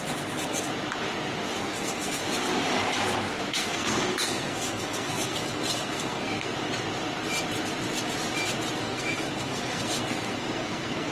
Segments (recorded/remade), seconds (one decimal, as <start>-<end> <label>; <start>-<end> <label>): 0.0-0.7 remade; 0.7-1.6 recorded; 1.6-2.2 remade; 2.2-3.5 recorded; 3.5-6.5 remade; 6.5-8.8 recorded; 8.8-11.1 remade